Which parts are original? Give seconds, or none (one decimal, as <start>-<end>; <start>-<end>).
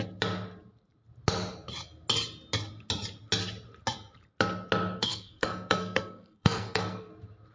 0.0-5.0; 7.1-7.5